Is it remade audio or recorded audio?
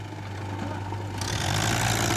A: recorded